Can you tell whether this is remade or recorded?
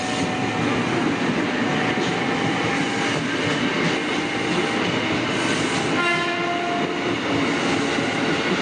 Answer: recorded